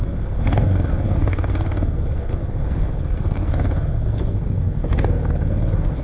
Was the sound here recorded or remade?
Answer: remade